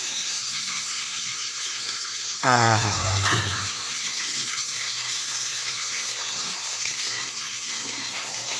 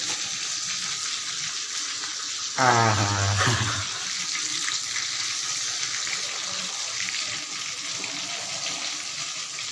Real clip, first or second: second